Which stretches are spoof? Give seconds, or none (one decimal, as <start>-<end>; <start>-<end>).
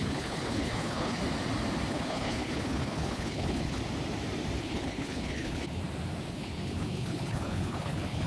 0.0-1.2; 1.9-3.8; 4.6-5.8; 6.3-8.3